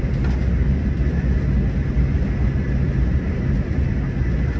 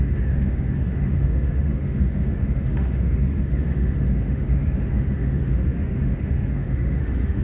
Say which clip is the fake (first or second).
second